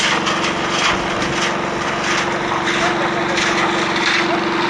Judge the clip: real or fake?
real